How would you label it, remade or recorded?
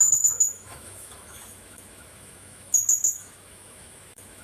remade